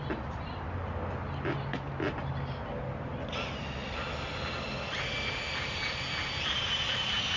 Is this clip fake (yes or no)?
no